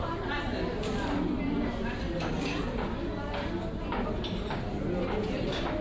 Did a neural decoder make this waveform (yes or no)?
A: no